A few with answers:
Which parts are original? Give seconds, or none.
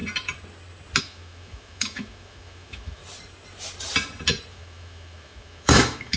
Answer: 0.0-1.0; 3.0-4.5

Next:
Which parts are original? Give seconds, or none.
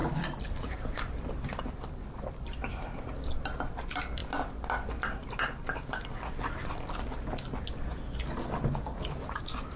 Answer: 0.0-9.8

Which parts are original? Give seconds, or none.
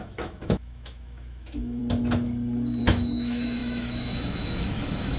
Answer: 1.8-2.8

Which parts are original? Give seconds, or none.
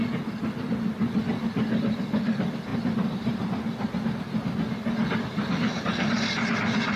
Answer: 0.0-7.0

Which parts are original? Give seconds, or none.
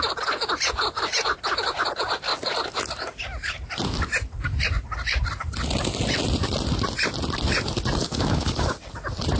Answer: 0.0-8.0; 8.8-9.4